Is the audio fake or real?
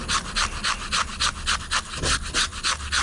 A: real